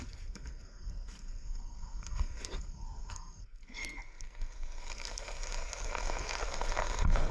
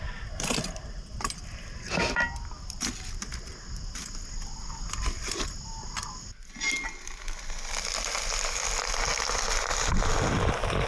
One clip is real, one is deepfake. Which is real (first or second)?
second